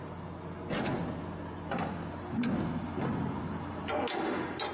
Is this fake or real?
real